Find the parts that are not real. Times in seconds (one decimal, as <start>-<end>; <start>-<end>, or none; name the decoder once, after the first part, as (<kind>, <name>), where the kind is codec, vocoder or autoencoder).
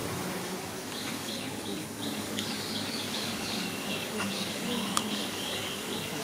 0.6-6.2 (codec, DAC)